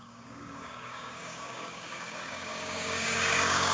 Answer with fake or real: fake